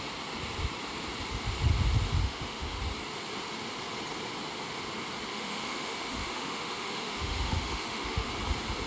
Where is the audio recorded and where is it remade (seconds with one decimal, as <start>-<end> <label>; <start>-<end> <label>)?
0.0-2.2 recorded; 2.2-2.8 remade; 2.8-5.3 recorded; 5.3-8.3 remade; 8.3-8.9 recorded